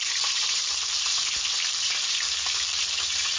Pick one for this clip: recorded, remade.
remade